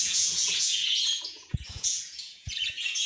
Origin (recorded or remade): remade